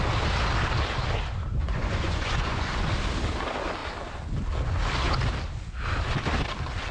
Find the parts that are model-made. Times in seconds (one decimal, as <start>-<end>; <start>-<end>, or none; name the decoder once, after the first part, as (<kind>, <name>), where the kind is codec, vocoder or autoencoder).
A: 1.6-2.7 (vocoder, Vocos)